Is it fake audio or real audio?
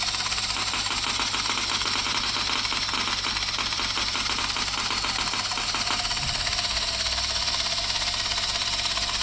real